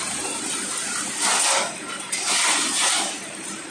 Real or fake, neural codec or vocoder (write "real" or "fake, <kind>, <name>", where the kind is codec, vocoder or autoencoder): real